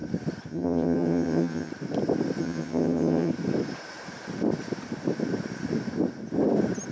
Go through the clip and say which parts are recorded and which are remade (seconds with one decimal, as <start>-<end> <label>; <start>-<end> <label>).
0.0-0.5 recorded; 0.5-1.7 remade; 1.7-2.4 recorded; 2.4-3.3 remade; 3.3-6.9 recorded